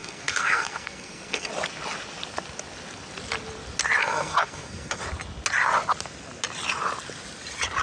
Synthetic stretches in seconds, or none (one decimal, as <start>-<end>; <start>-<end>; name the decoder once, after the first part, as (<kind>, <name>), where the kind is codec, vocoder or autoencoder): 0.0-1.5 (codec, SNAC); 4.0-5.0